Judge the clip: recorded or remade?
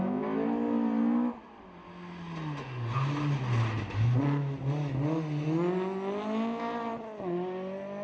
recorded